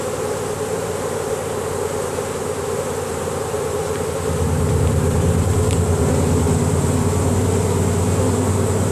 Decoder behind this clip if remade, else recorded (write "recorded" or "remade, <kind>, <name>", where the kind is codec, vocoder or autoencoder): remade, vocoder, BigVGAN v2